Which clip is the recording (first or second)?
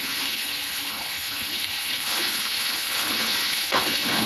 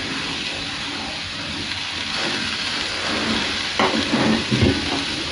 second